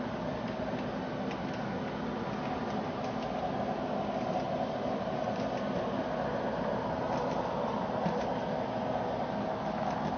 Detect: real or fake real